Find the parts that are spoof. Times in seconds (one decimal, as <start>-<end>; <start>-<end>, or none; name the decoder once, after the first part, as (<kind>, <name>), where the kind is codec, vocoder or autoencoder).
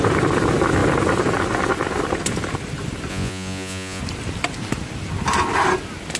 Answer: 3.1-4.0 (vocoder, Vocos)